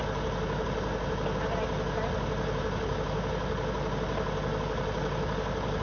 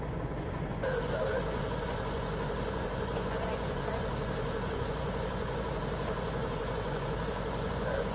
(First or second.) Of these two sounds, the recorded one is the first